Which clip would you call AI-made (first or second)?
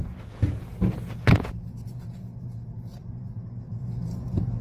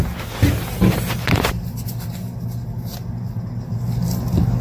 first